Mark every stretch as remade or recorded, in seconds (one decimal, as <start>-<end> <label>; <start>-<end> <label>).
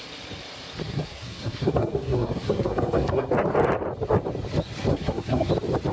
0.0-0.8 recorded; 0.8-3.3 remade; 3.3-4.9 recorded; 4.9-5.5 remade; 5.5-5.9 recorded